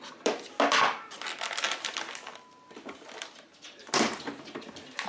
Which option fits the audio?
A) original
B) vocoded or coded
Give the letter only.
A